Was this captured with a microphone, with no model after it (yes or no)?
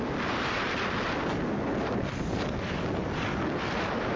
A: yes